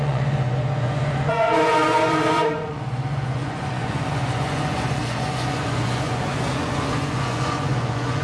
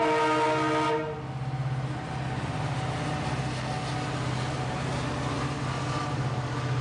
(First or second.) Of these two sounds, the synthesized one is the first